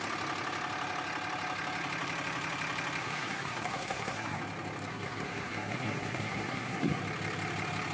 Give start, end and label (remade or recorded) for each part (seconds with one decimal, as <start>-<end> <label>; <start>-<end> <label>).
0.0-3.0 recorded; 3.0-4.4 remade; 4.4-4.9 recorded; 4.9-7.0 remade; 7.0-7.9 recorded